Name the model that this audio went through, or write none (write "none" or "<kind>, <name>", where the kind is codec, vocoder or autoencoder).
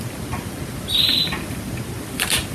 none